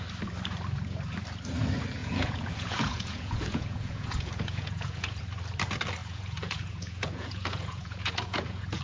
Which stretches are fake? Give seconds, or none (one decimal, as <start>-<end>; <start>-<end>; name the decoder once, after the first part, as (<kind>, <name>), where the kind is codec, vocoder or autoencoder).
2.0-5.2 (vocoder, Vocos); 6.0-8.8